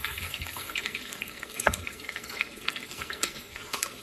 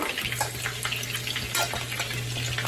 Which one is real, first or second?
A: second